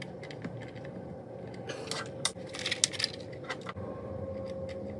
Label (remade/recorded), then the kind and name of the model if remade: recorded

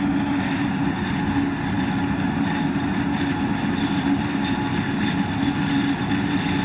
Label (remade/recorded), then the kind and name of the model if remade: recorded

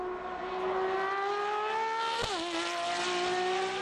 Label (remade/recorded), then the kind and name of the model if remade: recorded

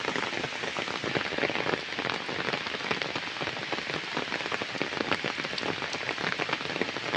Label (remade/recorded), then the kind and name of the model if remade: recorded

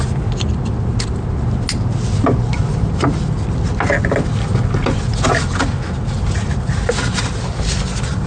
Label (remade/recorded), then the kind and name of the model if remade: recorded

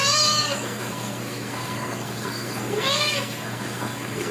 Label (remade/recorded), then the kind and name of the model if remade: remade, codec, SNAC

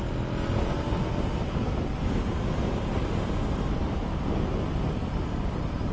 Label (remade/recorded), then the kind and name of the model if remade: recorded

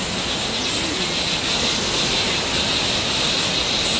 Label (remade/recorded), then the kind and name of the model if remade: recorded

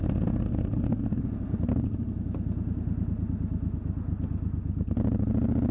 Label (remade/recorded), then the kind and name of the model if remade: recorded